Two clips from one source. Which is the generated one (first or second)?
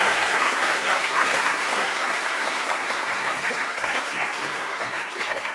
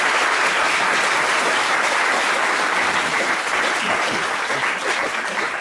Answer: first